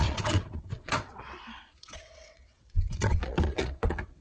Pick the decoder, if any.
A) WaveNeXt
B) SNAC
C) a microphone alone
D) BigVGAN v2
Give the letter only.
A